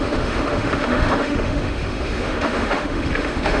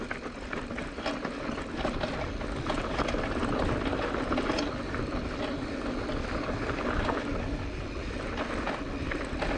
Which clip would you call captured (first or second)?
second